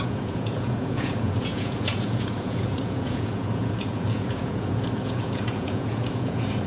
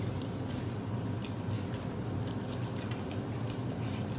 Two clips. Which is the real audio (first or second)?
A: second